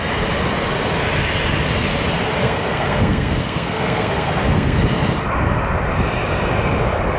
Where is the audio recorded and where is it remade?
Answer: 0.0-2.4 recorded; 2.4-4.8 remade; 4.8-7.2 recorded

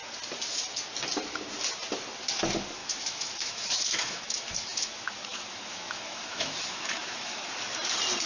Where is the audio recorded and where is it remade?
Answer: 0.0-2.8 recorded; 2.8-7.5 remade; 7.5-8.3 recorded

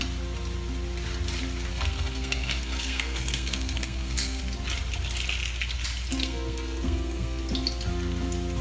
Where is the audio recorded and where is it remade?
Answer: 0.0-1.7 recorded; 1.7-4.4 remade; 4.4-6.2 recorded; 6.2-7.4 remade; 7.4-8.6 recorded

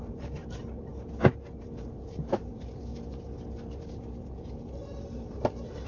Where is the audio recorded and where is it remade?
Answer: 0.0-0.9 remade; 0.9-1.5 recorded; 1.5-2.9 remade; 2.9-3.9 recorded; 3.9-5.9 remade

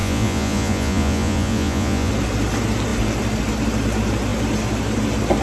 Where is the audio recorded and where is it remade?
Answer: 0.0-2.1 remade; 2.1-5.4 recorded